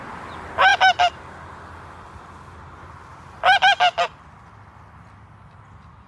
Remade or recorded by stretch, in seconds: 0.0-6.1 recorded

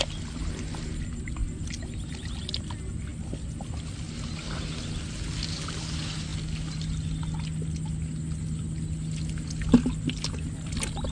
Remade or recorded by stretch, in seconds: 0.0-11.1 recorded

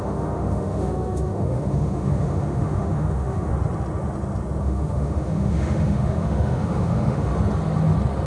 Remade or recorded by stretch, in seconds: 0.0-3.5 remade; 3.5-4.6 recorded; 4.6-7.3 remade; 7.3-8.3 recorded